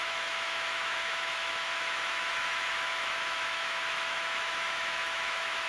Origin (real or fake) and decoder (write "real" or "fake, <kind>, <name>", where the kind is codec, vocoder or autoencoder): fake, autoencoder, DAC-VAE